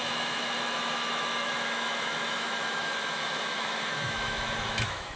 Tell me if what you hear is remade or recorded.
remade